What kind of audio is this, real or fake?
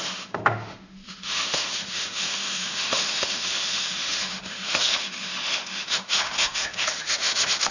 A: fake